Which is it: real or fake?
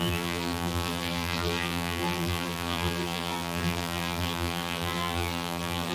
fake